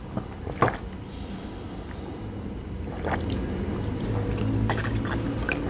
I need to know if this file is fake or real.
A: real